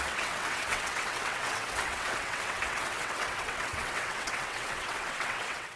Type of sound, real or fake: fake